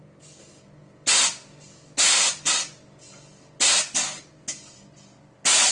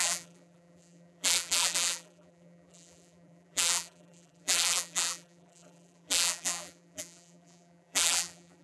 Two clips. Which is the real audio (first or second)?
first